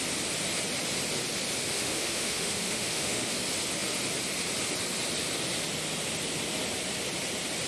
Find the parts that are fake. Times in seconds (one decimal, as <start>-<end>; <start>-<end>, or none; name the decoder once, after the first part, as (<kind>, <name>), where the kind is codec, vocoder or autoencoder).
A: 1.7-3.4 (autoencoder, DAC-VAE)